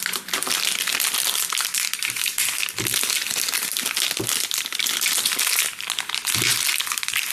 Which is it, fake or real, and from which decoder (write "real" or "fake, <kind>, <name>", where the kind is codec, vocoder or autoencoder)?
real